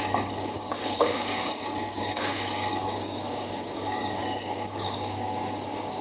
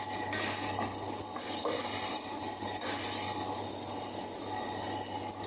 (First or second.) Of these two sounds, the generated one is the first